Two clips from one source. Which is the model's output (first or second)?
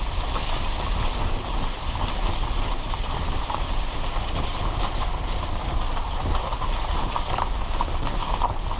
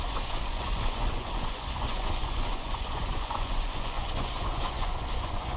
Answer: second